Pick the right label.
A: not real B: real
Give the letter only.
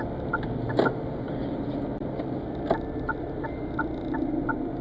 B